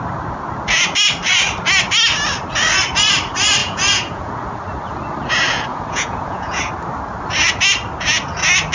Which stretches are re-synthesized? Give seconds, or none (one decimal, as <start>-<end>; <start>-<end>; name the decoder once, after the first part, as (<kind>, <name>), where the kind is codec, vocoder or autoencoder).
3.6-4.3 (vocoder, Vocos); 5.7-6.7